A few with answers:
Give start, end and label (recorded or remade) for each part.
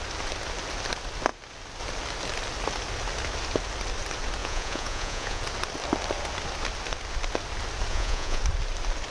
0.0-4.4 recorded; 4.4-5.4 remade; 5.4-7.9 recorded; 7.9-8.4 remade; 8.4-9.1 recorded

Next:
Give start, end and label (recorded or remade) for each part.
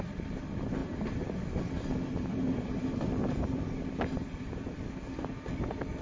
0.0-6.0 recorded